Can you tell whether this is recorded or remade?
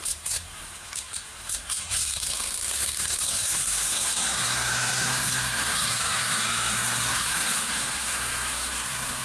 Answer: remade